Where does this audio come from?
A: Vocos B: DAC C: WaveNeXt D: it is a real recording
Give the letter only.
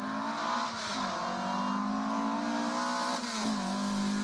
D